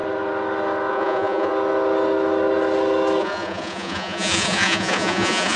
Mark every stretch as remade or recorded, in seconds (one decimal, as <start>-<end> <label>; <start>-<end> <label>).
0.0-0.9 recorded; 0.9-1.5 remade; 1.5-3.2 recorded; 3.2-5.6 remade